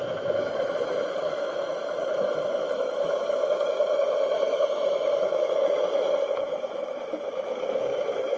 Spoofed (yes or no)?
yes